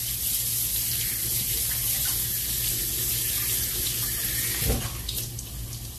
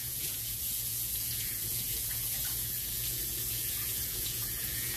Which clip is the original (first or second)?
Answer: first